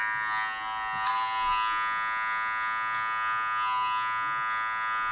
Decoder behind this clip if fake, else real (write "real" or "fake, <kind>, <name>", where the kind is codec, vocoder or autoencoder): real